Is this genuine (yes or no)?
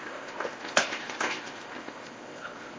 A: no